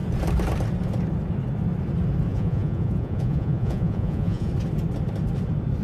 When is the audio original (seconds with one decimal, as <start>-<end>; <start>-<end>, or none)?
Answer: 0.0-2.3; 4.5-5.8